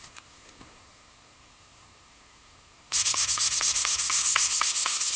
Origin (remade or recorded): remade